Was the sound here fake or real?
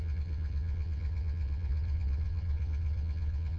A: fake